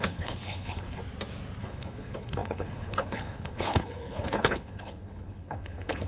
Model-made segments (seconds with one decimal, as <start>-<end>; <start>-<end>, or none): 0.0-1.0; 1.6-6.1